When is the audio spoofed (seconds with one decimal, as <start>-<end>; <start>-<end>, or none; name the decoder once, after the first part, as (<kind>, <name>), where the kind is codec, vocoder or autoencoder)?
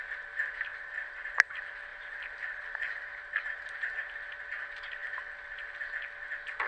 0.7-1.5 (vocoder, BigVGAN v2); 1.9-4.1